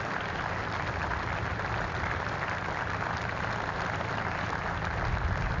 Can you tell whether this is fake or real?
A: real